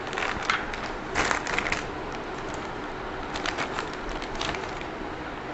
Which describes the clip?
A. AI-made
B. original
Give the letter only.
B